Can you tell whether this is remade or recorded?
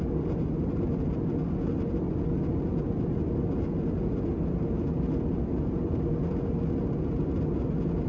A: recorded